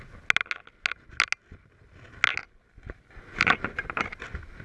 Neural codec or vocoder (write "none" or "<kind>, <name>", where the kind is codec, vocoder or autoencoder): none